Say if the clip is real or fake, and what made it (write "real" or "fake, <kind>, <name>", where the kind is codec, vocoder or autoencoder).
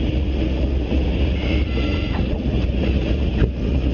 fake, vocoder, Vocos